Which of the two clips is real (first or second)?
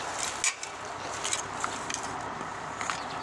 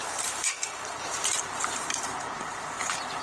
first